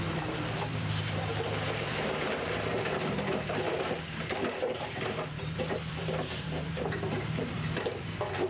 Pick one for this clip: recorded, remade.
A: remade